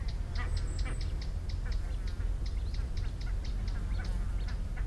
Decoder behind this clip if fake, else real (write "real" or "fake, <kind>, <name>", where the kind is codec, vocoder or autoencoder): real